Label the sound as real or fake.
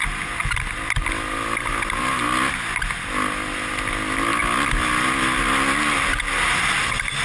real